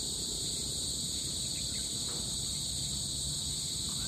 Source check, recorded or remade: recorded